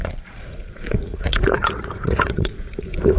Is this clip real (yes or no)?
no